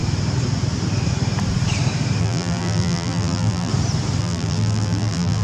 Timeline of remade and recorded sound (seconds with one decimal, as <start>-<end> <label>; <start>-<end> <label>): 0.0-2.2 recorded; 2.2-3.7 remade; 3.7-4.2 recorded; 4.2-5.4 remade